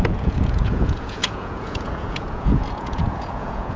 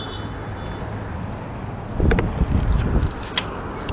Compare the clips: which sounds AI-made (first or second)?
first